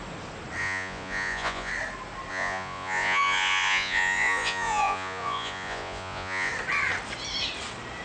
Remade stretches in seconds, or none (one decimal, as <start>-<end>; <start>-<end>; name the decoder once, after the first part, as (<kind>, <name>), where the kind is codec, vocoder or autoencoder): 0.6-1.7 (vocoder, Vocos); 2.3-6.5